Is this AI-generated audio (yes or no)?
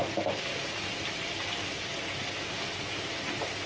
no